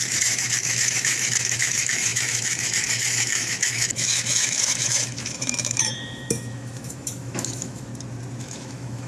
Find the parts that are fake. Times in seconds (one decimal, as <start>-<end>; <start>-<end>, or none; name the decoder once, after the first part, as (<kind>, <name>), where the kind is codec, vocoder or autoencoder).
0.0-7.9 (autoencoder, DAC-VAE); 8.4-9.1